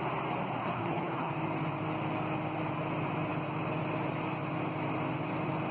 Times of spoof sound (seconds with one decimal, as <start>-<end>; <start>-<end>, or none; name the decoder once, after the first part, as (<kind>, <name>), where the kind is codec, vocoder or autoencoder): 0.6-1.3 (codec, HILCodec)